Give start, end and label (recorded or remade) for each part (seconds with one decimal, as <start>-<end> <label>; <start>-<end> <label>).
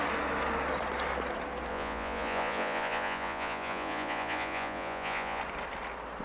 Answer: 0.0-1.7 recorded; 1.7-5.4 remade; 5.4-6.2 recorded